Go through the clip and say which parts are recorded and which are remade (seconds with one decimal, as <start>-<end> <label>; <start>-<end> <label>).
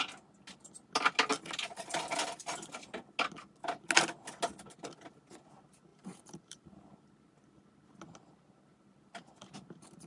0.0-5.9 recorded; 5.9-6.8 remade; 6.8-10.1 recorded